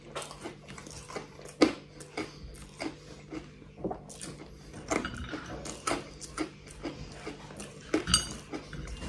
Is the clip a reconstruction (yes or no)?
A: no